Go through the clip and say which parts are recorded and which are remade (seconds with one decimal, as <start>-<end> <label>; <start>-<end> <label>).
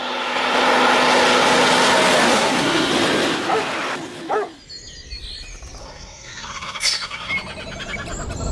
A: 0.0-2.3 recorded; 2.3-2.9 remade; 2.9-5.8 recorded; 5.8-7.3 remade; 7.3-8.5 recorded